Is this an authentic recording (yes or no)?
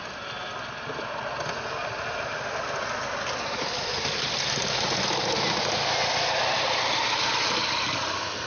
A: yes